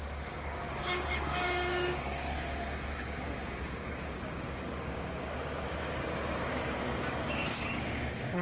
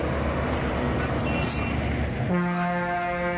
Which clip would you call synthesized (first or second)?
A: first